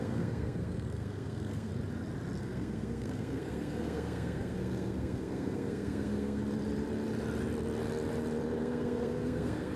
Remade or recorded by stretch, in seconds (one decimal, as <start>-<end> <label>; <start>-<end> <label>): 0.0-1.7 remade; 1.7-2.4 recorded; 2.4-6.4 remade; 6.4-8.6 recorded; 8.6-9.8 remade